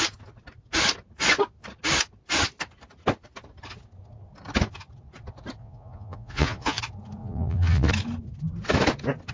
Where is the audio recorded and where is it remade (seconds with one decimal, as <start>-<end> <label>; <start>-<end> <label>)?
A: 0.0-5.6 recorded; 5.6-6.8 remade; 6.8-7.2 recorded; 7.2-7.9 remade; 7.9-9.3 recorded